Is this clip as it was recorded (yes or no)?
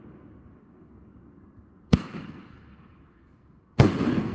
no